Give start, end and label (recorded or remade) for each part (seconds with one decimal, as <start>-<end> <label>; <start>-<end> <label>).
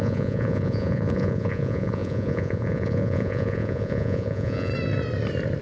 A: 0.0-4.7 remade; 4.7-5.6 recorded